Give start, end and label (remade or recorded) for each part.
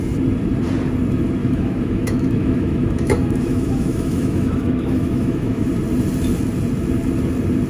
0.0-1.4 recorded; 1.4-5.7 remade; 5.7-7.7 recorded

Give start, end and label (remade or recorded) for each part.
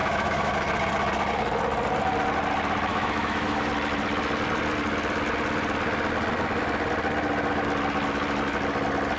0.0-0.5 remade; 0.5-2.9 recorded; 2.9-3.7 remade; 3.7-9.2 recorded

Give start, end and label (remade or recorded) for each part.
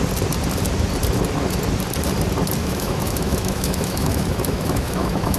0.0-2.6 recorded; 2.6-5.4 remade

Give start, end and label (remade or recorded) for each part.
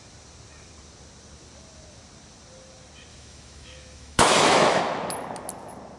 0.0-3.1 recorded; 3.1-4.8 remade; 4.8-6.0 recorded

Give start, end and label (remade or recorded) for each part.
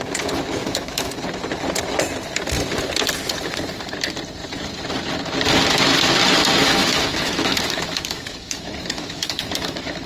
0.0-0.6 recorded; 0.6-1.1 remade; 1.1-6.6 recorded; 6.6-10.1 remade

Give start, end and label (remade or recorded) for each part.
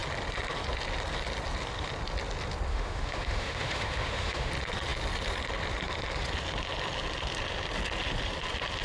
0.0-2.7 recorded; 2.7-4.5 remade; 4.5-8.8 recorded